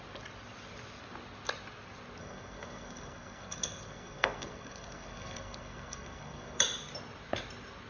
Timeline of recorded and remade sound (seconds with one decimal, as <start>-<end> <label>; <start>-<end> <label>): 0.0-2.2 recorded; 2.2-6.6 remade; 6.6-7.9 recorded